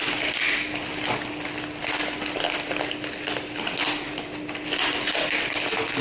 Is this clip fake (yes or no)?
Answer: no